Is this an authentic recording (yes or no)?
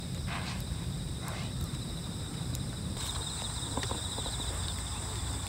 no